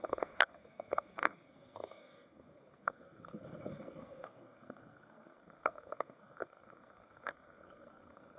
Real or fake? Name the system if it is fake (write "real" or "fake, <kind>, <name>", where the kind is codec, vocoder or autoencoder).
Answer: fake, codec, SNAC